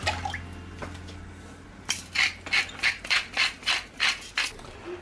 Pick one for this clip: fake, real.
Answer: real